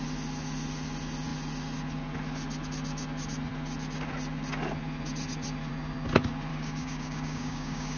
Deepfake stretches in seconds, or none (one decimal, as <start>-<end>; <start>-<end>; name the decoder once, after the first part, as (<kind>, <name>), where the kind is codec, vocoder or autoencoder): 6.5-8.0 (codec, DAC)